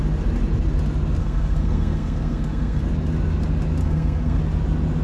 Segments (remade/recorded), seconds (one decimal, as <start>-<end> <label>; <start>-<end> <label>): 0.0-1.2 recorded; 1.2-2.8 remade; 2.8-3.8 recorded; 3.8-4.4 remade; 4.4-5.0 recorded